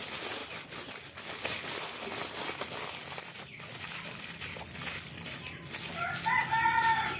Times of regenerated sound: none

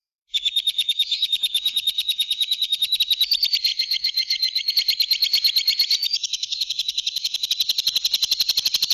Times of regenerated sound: 0.0-3.0; 3.7-4.7; 6.0-7.5

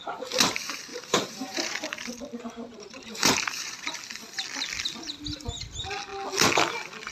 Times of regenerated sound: 0.9-4.0